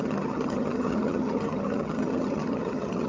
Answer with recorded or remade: remade